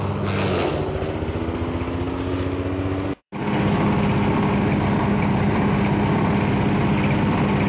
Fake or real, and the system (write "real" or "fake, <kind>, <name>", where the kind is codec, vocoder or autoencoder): real